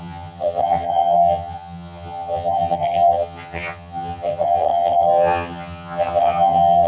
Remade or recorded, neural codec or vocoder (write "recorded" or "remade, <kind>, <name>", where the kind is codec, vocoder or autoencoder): remade, vocoder, HiFi-GAN